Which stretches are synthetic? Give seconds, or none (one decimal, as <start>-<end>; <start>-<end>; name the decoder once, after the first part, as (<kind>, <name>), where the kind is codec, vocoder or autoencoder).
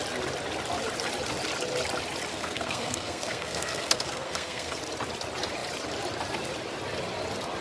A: 2.3-4.8 (codec, SNAC)